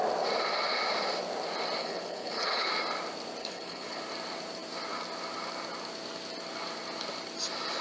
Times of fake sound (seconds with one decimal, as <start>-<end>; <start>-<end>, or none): 1.8-2.7; 3.4-4.0